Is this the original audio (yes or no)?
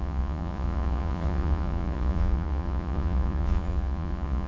no